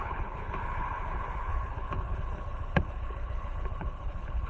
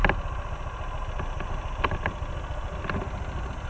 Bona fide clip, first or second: second